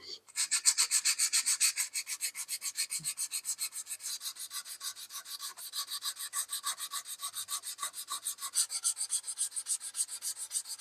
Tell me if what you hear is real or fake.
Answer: real